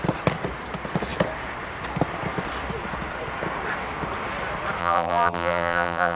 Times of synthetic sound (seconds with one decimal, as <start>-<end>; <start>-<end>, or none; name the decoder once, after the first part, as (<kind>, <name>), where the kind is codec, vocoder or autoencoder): 4.8-6.2 (vocoder, BigVGAN v2)